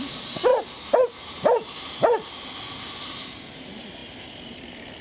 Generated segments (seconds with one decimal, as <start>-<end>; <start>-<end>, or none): none